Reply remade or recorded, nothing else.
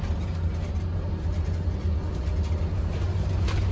recorded